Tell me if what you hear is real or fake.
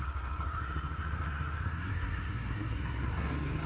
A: fake